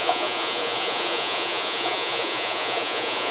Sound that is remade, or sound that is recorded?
remade